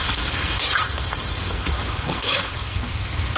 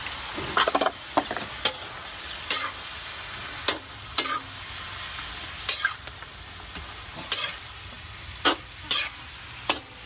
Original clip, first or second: second